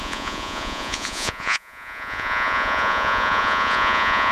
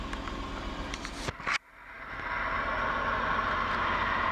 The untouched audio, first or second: second